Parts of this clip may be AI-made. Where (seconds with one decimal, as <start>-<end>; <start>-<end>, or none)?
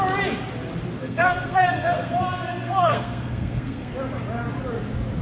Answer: 1.0-3.9